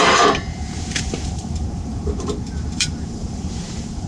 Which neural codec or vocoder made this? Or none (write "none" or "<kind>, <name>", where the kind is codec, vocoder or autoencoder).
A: vocoder, BigVGAN v2